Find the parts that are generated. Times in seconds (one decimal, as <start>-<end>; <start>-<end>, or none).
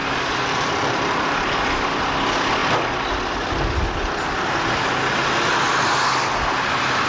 0.0-2.0